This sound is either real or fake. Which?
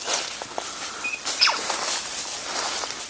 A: real